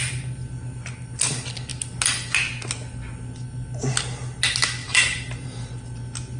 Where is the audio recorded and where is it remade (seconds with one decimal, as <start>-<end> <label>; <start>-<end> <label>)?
0.0-4.8 recorded; 4.8-6.0 remade; 6.0-6.4 recorded